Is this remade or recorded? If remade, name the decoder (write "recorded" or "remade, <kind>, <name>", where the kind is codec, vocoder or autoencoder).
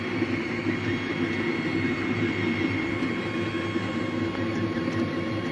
recorded